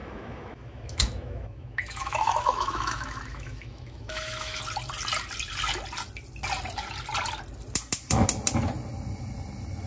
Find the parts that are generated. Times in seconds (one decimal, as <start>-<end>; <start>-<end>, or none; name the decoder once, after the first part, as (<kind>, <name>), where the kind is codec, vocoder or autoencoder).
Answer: 0.0-4.6 (autoencoder, DAC-VAE)